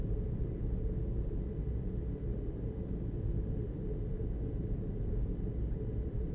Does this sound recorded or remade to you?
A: remade